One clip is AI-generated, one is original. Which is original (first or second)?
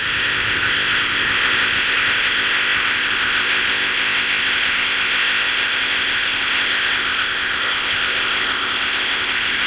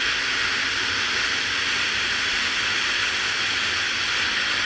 second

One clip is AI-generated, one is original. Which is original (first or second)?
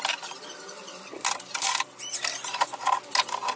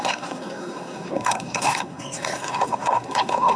first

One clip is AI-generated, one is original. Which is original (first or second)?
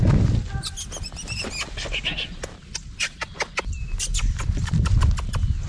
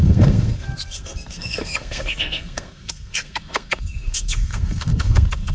first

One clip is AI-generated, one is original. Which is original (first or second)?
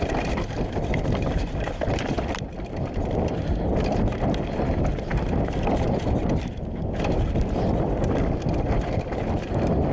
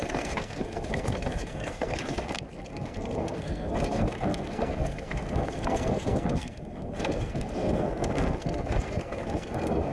first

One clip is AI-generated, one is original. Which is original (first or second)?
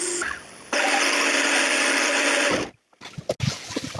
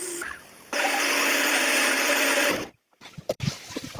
first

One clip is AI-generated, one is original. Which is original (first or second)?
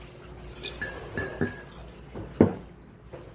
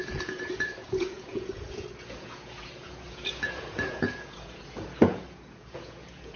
first